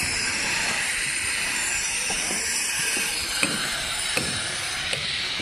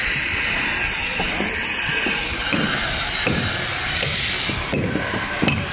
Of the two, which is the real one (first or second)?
second